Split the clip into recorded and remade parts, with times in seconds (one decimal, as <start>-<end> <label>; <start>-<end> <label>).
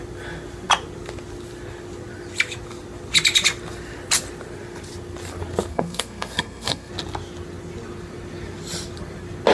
0.0-5.7 recorded; 5.7-6.9 remade; 6.9-9.5 recorded